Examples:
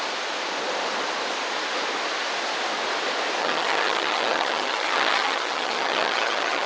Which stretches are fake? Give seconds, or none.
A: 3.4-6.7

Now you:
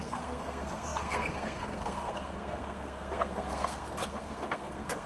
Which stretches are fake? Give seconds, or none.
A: 0.0-5.1

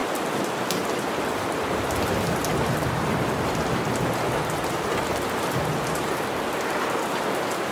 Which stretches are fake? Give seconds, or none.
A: none